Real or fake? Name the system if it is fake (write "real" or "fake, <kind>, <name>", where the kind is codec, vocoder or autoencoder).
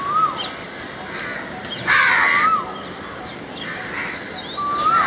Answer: real